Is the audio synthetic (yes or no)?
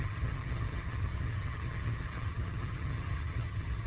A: yes